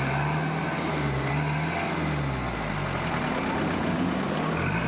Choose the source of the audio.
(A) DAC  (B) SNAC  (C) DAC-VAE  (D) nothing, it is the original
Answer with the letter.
D